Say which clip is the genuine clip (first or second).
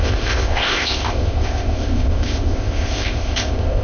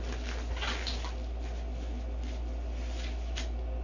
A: second